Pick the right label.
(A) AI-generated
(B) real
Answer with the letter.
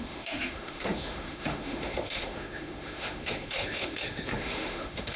A